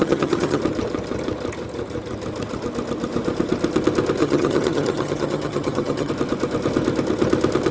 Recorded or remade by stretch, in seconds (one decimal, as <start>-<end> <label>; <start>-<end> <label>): 0.0-0.6 remade; 0.6-4.2 recorded; 4.2-6.1 remade; 6.1-7.7 recorded